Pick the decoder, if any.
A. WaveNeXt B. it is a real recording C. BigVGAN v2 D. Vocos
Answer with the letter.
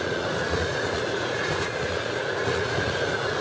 D